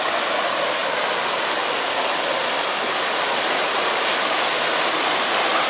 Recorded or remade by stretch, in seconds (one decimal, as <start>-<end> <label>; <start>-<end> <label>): 0.0-5.7 recorded